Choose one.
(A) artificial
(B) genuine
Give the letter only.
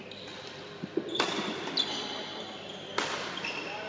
B